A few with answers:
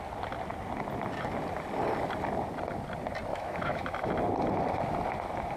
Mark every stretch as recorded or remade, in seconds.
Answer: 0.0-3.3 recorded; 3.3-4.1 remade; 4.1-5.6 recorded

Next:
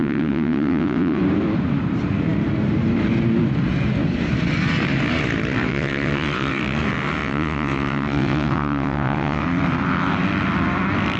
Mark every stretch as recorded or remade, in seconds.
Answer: 0.0-1.2 remade; 1.2-5.7 recorded; 5.7-6.6 remade; 6.6-7.2 recorded; 7.2-9.4 remade; 9.4-11.2 recorded

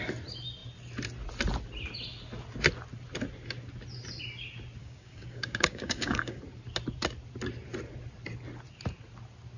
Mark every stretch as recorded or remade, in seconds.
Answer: 0.0-4.8 recorded; 4.8-6.4 remade; 6.4-9.6 recorded